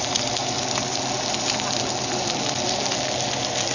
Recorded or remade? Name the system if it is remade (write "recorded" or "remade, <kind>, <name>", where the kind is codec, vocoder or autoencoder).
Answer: recorded